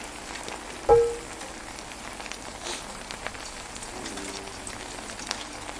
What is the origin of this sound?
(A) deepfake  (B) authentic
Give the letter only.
B